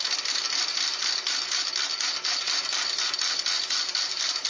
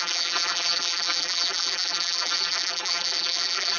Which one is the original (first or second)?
first